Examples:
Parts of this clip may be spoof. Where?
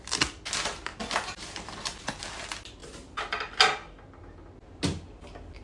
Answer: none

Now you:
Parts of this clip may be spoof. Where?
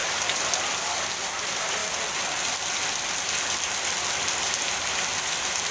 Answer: 1.3-1.8 (vocoder, BigVGAN v2); 5.2-5.7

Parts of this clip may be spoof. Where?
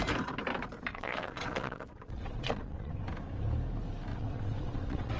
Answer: 0.9-2.9 (vocoder, WaveNeXt); 4.1-5.2